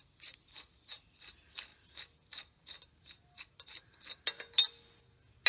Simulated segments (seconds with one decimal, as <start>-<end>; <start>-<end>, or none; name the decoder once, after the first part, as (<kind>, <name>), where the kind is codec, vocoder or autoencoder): none

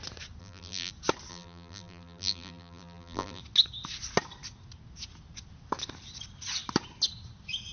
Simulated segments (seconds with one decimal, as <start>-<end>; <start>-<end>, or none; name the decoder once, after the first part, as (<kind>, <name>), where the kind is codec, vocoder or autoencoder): 0.4-0.9 (vocoder, BigVGAN v2); 1.3-3.4

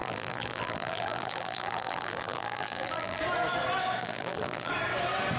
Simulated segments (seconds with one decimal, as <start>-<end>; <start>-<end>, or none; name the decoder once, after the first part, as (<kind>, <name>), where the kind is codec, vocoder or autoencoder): 0.0-3.2 (vocoder, BigVGAN v2); 4.0-4.7

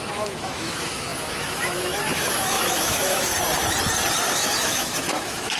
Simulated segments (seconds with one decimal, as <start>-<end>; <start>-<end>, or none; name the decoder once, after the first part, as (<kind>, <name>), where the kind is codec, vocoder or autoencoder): 0.0-3.3 (autoencoder, DAC-VAE); 4.3-5.6

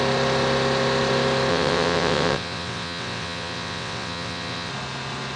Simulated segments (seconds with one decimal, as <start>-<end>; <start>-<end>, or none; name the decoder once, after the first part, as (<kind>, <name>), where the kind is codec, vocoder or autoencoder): 1.5-4.7 (vocoder, WaveNeXt)